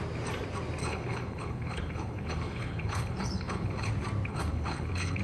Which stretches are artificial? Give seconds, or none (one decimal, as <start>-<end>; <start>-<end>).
0.8-3.9; 4.3-5.2